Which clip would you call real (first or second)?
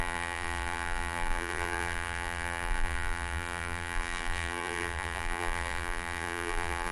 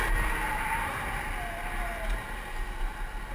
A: second